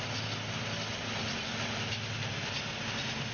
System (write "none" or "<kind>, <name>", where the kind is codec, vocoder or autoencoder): none